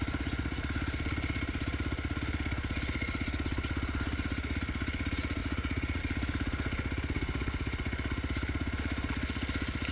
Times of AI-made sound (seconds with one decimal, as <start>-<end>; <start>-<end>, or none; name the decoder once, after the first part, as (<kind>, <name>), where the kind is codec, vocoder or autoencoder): 5.4-6.0 (vocoder, Vocos)